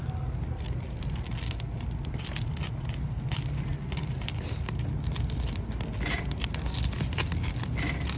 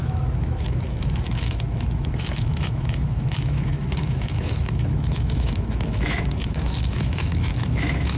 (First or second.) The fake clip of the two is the second